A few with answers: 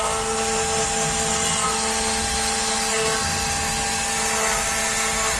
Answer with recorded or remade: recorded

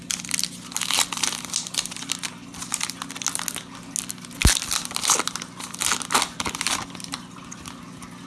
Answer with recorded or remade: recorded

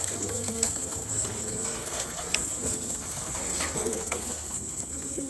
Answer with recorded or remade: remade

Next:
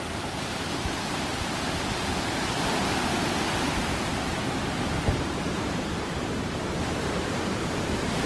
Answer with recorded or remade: remade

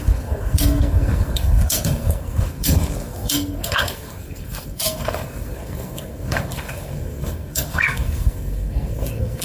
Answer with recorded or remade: remade